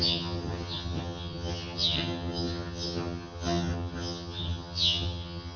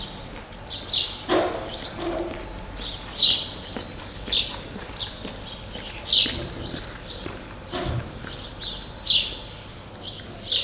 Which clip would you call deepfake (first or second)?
first